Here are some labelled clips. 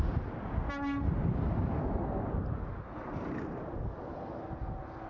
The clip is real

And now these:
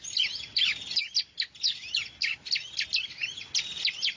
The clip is real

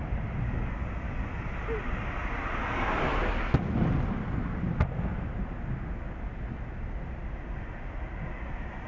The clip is real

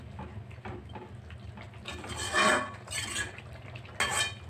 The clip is real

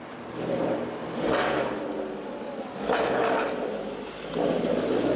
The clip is real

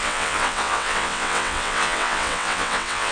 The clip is fake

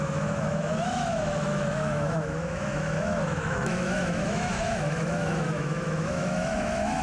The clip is fake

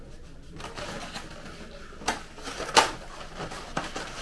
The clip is real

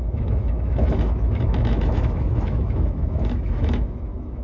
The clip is fake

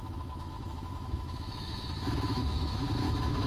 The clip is fake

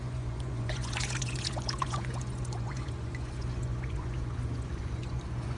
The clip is fake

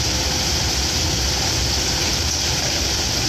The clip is real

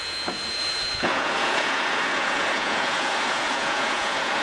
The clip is fake